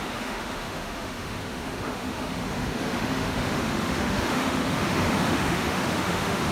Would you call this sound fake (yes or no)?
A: yes